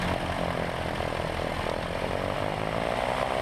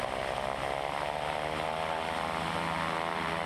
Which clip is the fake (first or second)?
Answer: second